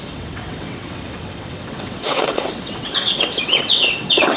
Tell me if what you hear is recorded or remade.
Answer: remade